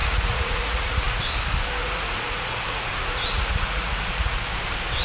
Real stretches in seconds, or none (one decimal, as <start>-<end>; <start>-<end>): 1.2-1.8; 4.3-5.0